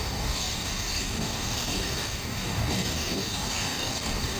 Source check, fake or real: fake